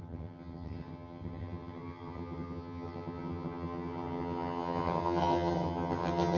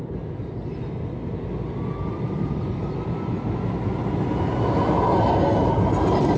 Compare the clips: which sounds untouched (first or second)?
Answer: second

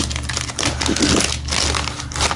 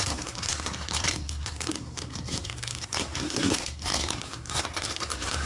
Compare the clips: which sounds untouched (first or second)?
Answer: first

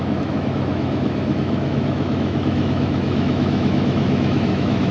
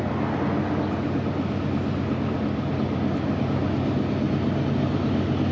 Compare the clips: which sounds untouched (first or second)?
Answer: second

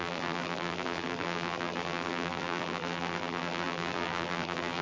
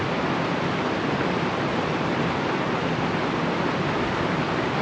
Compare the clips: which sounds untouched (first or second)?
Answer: second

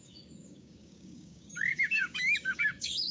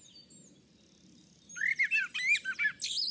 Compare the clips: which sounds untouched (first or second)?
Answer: second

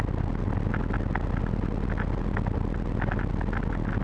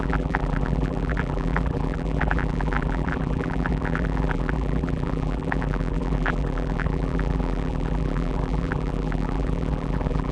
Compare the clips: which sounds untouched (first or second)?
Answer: first